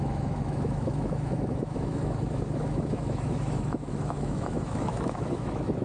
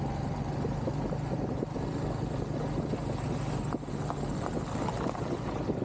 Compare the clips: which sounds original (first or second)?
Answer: second